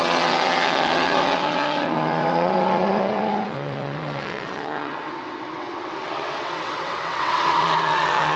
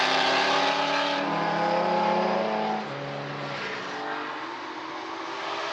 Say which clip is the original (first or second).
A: second